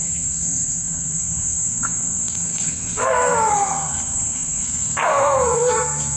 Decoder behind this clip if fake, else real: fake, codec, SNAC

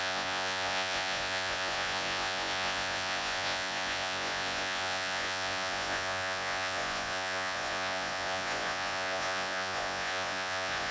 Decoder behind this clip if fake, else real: fake, vocoder, Vocos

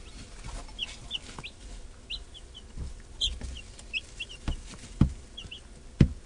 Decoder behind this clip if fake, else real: real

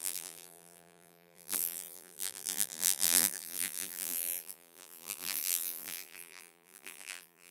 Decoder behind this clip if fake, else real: fake, vocoder, BigVGAN v2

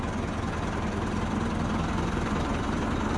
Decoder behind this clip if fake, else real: real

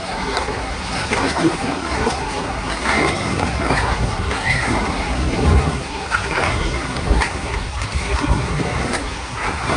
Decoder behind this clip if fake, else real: fake, codec, SNAC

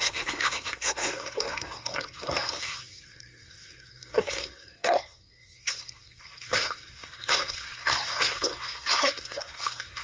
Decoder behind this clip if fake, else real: fake, codec, SNAC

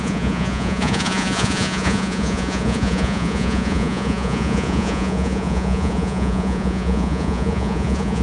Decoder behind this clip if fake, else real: fake, vocoder, Vocos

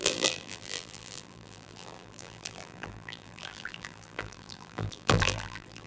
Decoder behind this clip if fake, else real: fake, vocoder, BigVGAN v2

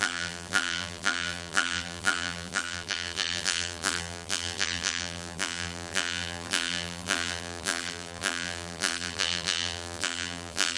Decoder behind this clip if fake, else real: fake, vocoder, BigVGAN v2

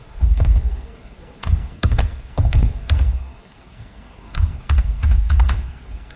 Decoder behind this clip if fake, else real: fake, codec, SNAC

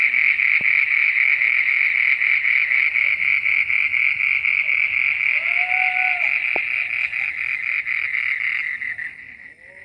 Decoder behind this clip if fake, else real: real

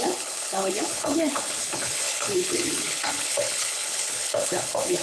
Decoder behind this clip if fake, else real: fake, codec, HILCodec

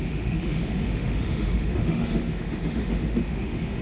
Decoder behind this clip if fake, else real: fake, autoencoder, DAC-VAE